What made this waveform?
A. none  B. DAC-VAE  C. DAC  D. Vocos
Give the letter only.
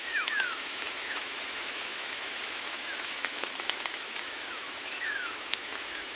B